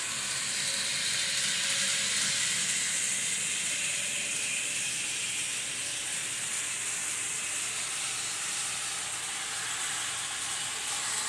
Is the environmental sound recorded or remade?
recorded